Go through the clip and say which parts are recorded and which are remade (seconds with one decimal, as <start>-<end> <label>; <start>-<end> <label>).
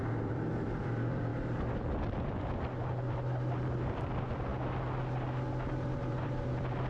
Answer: 0.0-1.3 remade; 1.3-4.0 recorded; 4.0-4.5 remade; 4.5-5.7 recorded; 5.7-6.9 remade